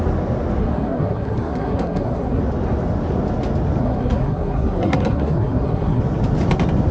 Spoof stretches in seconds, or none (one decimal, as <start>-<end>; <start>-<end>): 0.6-2.4; 3.8-6.0